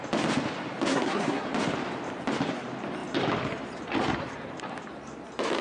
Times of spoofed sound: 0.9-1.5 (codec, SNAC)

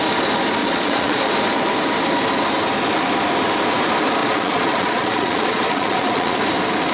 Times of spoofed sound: 0.6-1.3 (vocoder, Vocos); 4.2-6.4

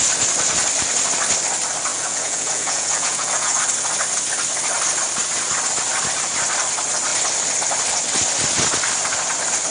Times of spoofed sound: 1.9-3.6 (vocoder, Vocos)

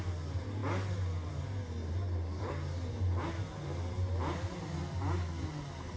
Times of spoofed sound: none

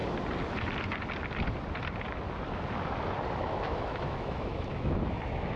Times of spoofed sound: 3.4-5.6 (autoencoder, DAC-VAE)

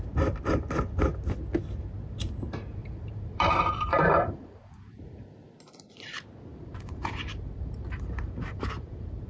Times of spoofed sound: 2.8-5.5 (vocoder, BigVGAN v2); 6.5-9.3

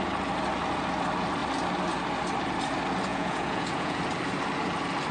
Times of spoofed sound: 3.1-4.0 (vocoder, Vocos)

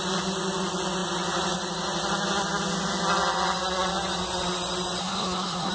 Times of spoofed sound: 5.0-5.7 (codec, SNAC)